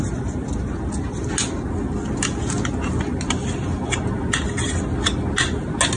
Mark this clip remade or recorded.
recorded